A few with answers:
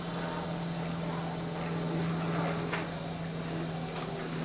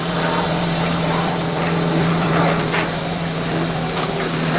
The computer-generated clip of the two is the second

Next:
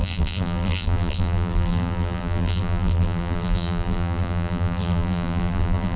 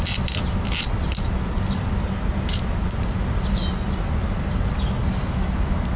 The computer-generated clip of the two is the first